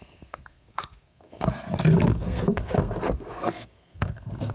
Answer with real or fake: fake